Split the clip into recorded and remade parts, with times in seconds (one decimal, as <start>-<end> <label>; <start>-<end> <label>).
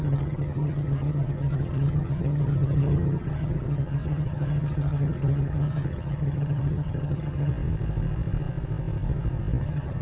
0.0-7.5 remade; 7.5-9.6 recorded; 9.6-10.0 remade